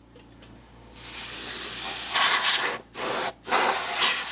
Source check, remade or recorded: recorded